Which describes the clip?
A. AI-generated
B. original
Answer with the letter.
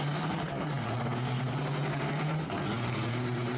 B